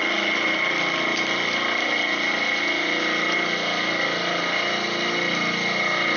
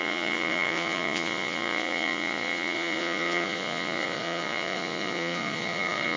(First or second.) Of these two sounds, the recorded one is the first